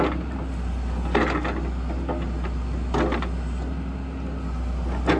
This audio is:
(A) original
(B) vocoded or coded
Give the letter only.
A